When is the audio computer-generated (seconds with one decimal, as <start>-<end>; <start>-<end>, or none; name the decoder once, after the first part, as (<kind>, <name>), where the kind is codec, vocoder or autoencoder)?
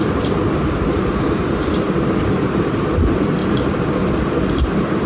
none